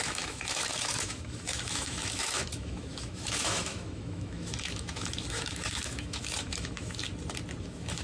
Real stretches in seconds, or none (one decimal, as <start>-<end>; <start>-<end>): 7.0-7.6